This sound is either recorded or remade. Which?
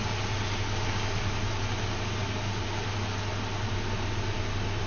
recorded